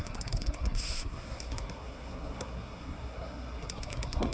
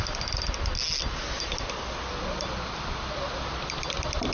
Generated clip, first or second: first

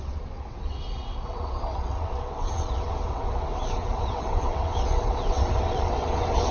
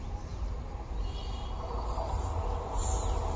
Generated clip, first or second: first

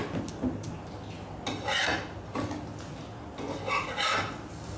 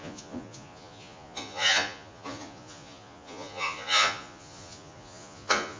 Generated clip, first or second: second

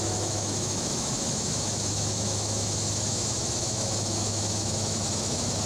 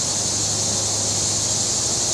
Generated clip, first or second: first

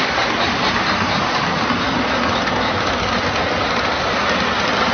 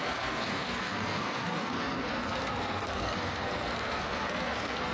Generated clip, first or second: second